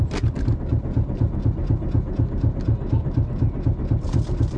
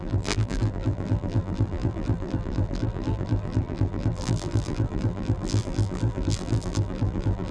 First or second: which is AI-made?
second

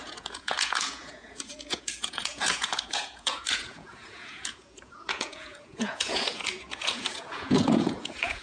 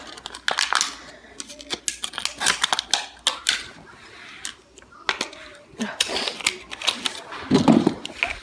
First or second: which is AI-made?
first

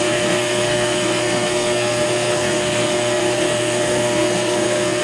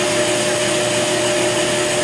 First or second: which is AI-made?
first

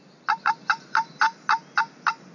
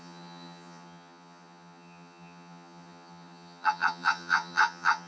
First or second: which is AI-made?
second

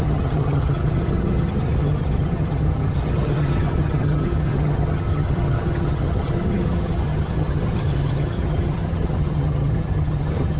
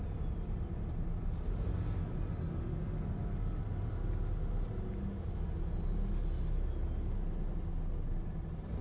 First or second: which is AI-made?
first